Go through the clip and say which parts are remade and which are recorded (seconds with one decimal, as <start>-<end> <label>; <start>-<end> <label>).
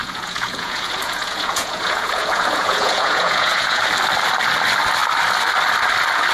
0.0-3.8 remade; 3.8-6.3 recorded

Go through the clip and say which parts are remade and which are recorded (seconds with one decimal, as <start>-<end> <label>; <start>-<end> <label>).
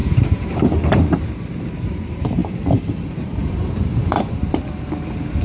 0.0-5.4 remade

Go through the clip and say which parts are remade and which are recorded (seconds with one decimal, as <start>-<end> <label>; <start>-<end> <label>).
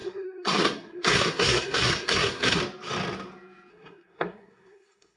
0.0-2.6 remade; 2.6-3.7 recorded; 3.7-5.2 remade